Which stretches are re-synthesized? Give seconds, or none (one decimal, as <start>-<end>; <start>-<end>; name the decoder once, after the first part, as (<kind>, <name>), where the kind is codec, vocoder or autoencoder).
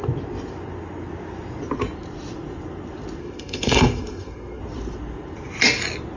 3.2-4.6 (codec, SNAC)